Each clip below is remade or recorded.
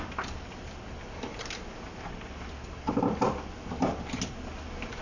recorded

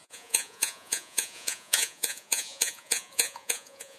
remade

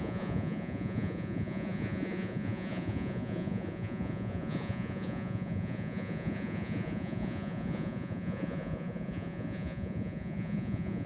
remade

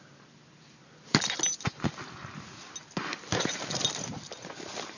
recorded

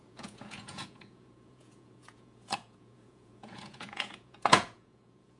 remade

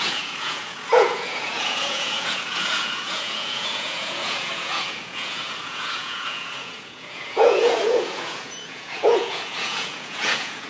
remade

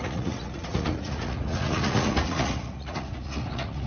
remade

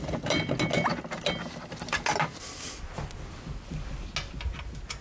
recorded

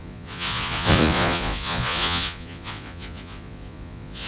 remade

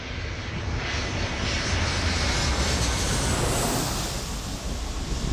recorded